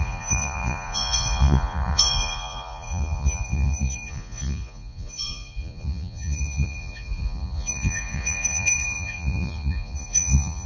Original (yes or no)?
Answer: no